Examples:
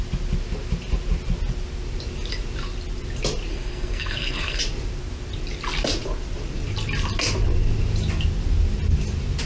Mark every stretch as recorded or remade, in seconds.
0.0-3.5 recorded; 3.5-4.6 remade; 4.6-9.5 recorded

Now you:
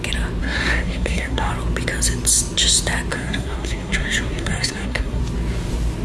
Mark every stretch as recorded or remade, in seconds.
0.0-0.4 recorded; 0.4-1.5 remade; 1.5-3.1 recorded; 3.1-5.2 remade; 5.2-6.0 recorded

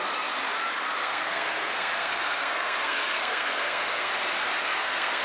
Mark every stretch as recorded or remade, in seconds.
0.0-1.0 recorded; 1.0-4.1 remade; 4.1-4.6 recorded; 4.6-5.2 remade

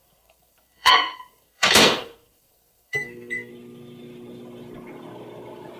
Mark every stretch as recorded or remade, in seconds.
0.0-3.5 remade; 3.5-5.8 recorded

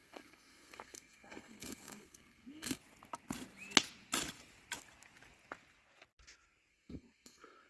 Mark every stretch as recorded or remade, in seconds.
0.0-2.8 remade; 2.8-6.7 recorded; 6.7-7.7 remade

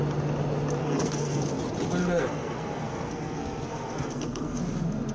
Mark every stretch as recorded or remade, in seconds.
0.0-0.8 recorded; 0.8-1.6 remade; 1.6-2.0 recorded; 2.0-4.6 remade; 4.6-5.1 recorded

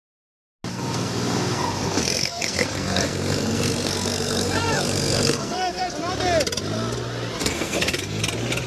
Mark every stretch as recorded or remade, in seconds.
0.0-0.7 recorded; 0.7-5.8 remade; 5.8-7.4 recorded; 7.4-8.2 remade; 8.2-8.7 recorded

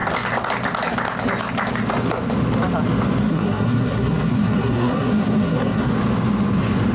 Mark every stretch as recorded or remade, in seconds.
0.0-3.2 recorded; 3.2-5.9 remade; 5.9-6.9 recorded